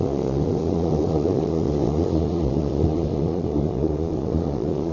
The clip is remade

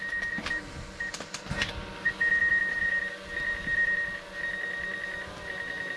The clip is recorded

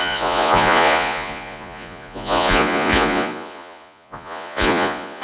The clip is remade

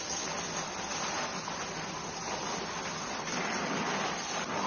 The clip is recorded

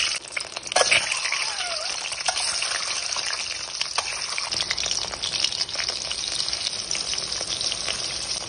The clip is recorded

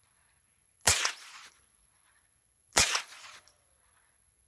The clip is remade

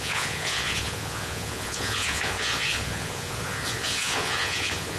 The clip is remade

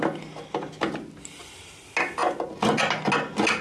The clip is recorded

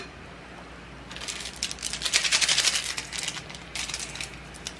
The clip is recorded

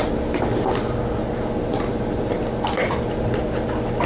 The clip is recorded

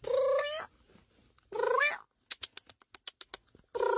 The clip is recorded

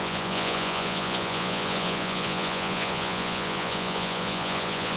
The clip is remade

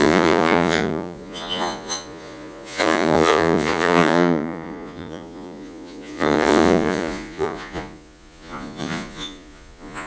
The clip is remade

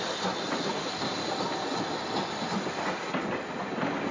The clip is recorded